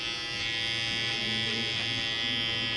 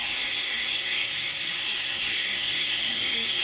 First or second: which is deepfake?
second